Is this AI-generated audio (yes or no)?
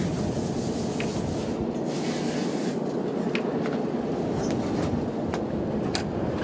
no